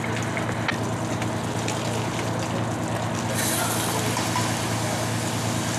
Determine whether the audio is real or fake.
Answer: real